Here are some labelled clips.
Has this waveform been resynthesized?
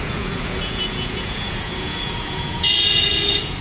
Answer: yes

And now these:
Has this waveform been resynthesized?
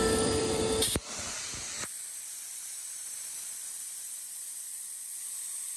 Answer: yes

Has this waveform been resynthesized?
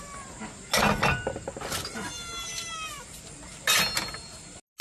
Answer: no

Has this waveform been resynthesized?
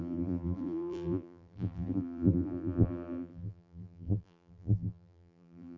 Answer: yes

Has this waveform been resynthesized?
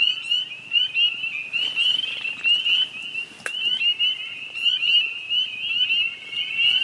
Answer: no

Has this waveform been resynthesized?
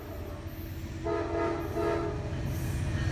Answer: no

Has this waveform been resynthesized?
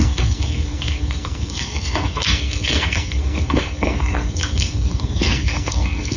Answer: yes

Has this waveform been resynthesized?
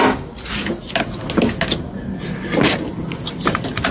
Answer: no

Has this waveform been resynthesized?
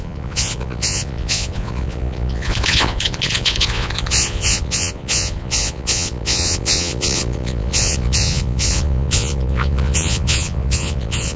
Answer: yes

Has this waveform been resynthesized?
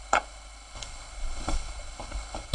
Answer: yes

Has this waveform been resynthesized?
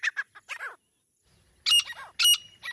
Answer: no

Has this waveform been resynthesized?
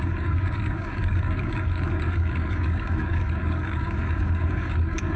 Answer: yes